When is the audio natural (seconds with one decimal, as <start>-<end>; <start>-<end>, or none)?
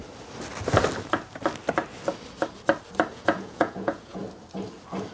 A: 0.0-3.1; 4.2-5.1